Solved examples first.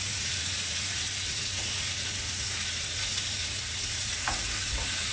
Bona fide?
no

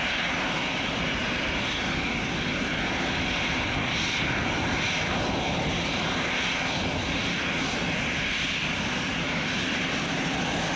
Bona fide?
yes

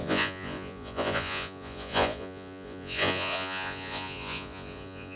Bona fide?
no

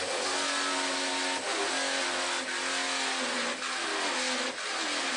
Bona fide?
yes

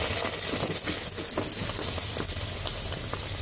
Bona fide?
yes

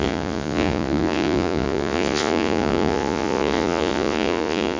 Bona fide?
no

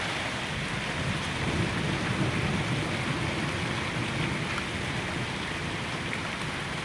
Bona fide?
yes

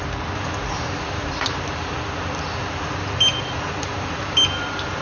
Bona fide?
yes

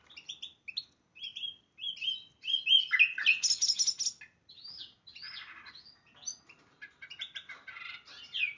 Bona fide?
yes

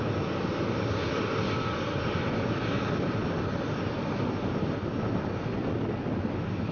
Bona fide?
yes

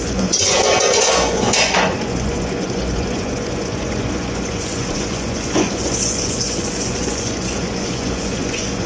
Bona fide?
no